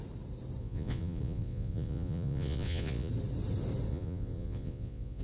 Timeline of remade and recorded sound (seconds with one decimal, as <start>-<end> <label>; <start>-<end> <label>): 0.0-0.6 recorded; 0.6-3.1 remade; 3.1-3.9 recorded; 3.9-5.2 remade